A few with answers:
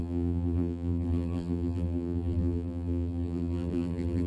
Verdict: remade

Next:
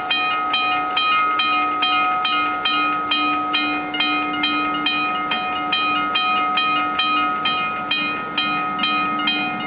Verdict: recorded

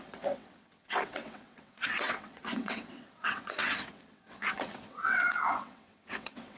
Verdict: remade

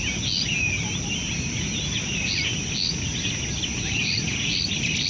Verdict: recorded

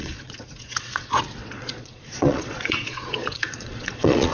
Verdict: remade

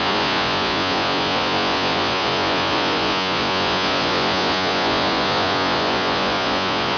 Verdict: remade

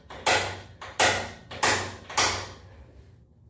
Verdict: recorded